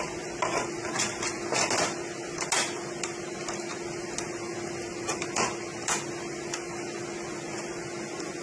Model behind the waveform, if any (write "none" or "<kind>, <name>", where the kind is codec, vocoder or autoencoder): none